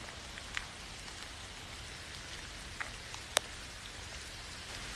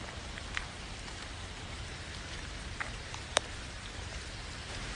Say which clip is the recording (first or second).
first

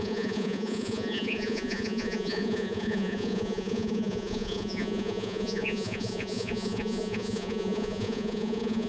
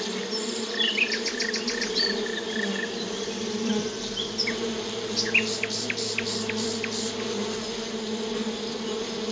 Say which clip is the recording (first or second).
second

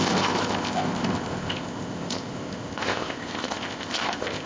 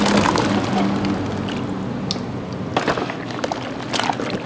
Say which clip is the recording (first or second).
second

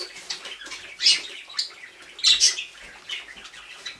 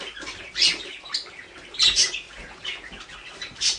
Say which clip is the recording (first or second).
first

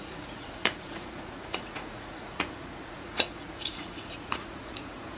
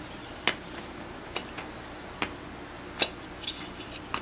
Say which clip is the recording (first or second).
second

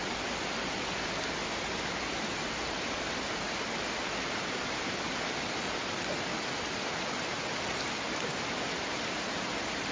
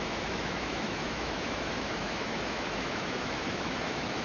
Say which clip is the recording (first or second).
first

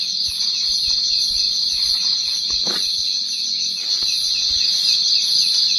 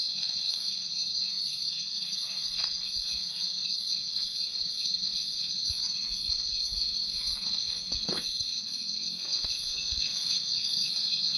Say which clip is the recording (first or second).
first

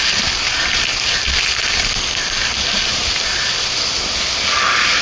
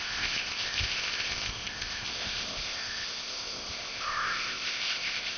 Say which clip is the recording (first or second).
first